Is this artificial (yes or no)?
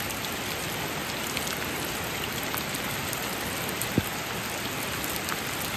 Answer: no